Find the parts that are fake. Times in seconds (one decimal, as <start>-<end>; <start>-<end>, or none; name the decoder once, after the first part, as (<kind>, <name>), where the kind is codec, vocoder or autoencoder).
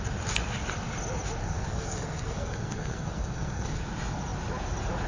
1.4-3.8 (codec, SNAC)